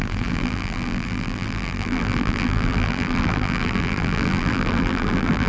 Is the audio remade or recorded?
remade